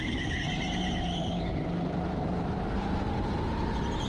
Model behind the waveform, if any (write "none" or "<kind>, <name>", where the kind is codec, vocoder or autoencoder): vocoder, BigVGAN v2